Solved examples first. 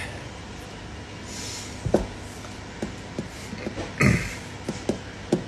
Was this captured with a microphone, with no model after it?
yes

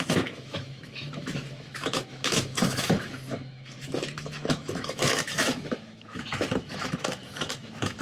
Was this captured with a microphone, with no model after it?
no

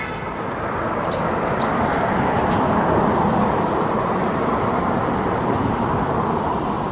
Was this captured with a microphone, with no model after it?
yes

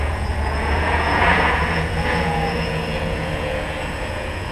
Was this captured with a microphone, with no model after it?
no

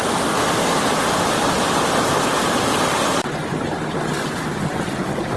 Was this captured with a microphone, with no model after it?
yes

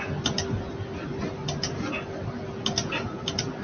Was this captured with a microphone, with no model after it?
yes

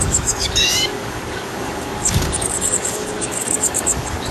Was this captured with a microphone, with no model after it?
no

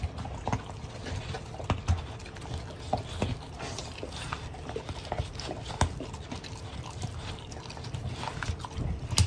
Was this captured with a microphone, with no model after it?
yes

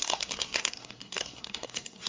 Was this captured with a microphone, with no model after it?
no